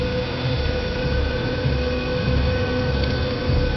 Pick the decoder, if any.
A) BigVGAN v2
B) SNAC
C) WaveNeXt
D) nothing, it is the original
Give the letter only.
B